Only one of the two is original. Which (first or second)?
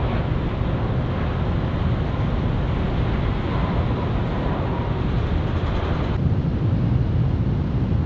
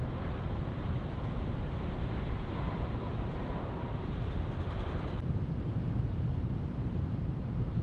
first